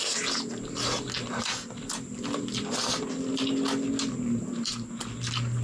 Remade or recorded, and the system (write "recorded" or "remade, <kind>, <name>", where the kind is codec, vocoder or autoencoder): recorded